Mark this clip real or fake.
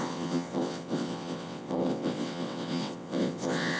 fake